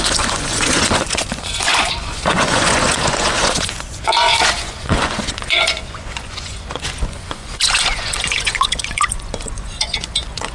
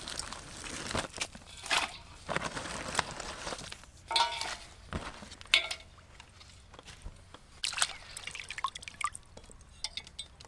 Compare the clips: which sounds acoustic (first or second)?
second